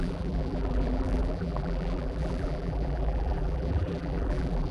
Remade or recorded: remade